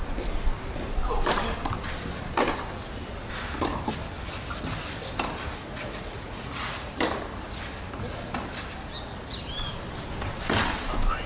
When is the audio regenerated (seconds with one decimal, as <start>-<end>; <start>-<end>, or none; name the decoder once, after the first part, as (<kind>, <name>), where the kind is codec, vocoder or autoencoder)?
5.6-6.9 (vocoder, Vocos)